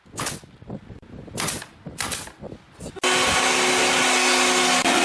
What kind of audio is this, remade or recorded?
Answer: recorded